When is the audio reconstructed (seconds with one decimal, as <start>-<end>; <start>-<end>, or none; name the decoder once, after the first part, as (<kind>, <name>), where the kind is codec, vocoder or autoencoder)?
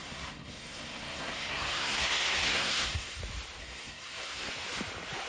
0.0-3.2 (codec, SNAC); 3.6-4.5